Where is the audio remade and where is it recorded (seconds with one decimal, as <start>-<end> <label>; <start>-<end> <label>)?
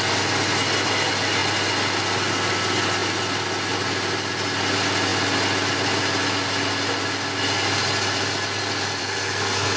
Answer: 0.0-9.0 recorded; 9.0-9.8 remade